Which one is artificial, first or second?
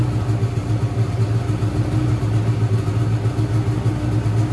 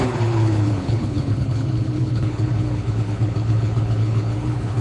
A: second